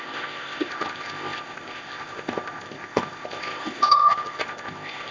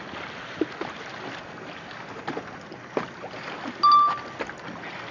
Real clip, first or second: second